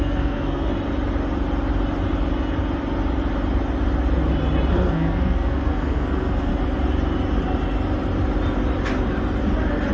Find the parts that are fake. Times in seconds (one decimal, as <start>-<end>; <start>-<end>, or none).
0.0-0.7; 4.7-6.5